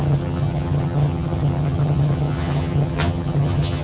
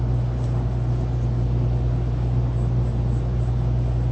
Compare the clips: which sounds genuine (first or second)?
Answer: second